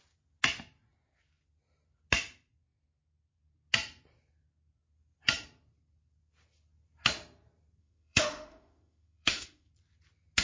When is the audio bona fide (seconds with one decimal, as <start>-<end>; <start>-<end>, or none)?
0.0-7.8; 9.7-10.4

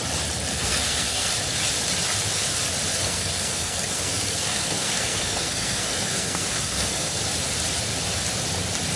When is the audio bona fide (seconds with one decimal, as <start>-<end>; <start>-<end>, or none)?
0.0-0.5; 1.3-2.9; 7.2-9.0

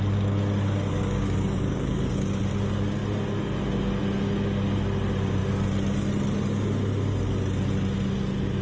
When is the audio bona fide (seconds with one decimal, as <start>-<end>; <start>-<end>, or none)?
0.0-0.9; 2.4-8.6

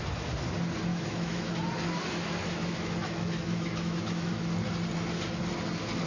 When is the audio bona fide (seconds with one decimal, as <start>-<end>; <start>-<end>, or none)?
0.0-0.9; 1.6-2.4; 4.4-6.1